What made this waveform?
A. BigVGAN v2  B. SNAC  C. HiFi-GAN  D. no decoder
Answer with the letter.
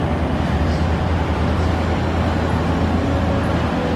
D